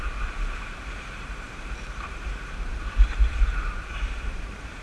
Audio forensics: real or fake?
fake